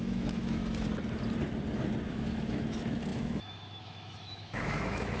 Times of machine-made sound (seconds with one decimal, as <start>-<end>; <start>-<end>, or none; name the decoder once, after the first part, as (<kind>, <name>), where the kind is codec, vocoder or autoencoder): 0.0-0.6 (autoencoder, DAC-VAE); 2.1-5.2